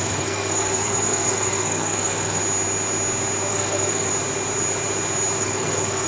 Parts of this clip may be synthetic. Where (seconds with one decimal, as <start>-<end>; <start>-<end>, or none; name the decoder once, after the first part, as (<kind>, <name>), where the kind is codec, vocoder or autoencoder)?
0.0-2.4 (codec, SNAC); 3.5-4.1; 5.4-6.1